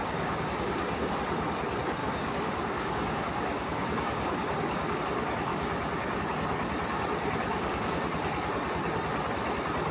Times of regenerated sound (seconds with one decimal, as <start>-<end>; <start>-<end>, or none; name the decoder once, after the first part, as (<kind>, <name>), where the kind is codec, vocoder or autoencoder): 0.0-1.2 (codec, DAC); 2.0-5.0; 5.5-6.2; 7.5-8.0